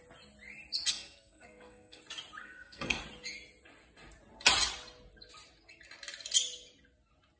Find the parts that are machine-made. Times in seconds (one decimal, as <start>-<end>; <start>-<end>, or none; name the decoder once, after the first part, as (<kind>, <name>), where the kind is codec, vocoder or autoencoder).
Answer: 0.9-2.0 (codec, SNAC); 2.4-3.0